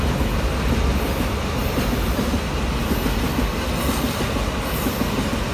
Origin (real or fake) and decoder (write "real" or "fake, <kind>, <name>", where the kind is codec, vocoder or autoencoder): real